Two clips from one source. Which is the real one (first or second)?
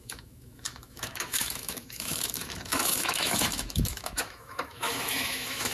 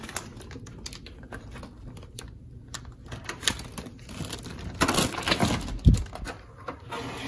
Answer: second